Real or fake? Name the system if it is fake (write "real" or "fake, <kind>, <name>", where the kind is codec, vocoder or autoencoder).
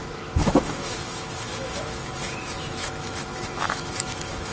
fake, autoencoder, DAC-VAE